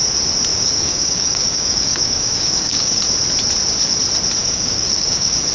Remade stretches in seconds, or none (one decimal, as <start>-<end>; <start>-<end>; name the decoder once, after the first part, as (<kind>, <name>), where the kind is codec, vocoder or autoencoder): 0.5-3.0 (codec, DAC); 4.4-5.5